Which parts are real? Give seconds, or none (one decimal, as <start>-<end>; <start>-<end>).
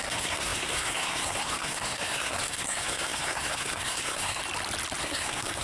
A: 4.4-5.0